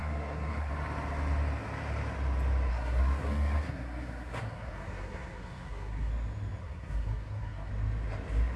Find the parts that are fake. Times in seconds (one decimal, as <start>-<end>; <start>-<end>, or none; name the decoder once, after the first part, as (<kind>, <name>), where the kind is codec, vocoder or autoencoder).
0.0-0.7 (codec, SNAC); 2.7-6.1; 6.6-7.7